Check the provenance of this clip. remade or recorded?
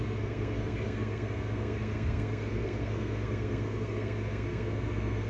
remade